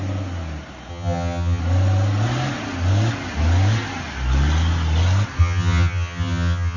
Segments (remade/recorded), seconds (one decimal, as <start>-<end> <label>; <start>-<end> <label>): 0.0-0.9 recorded; 0.9-1.6 remade; 1.6-5.4 recorded; 5.4-6.8 remade